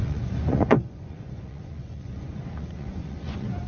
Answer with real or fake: fake